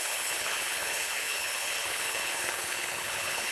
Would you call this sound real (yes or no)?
no